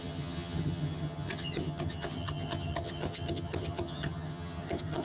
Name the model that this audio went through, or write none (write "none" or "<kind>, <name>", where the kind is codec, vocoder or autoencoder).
vocoder, HiFi-GAN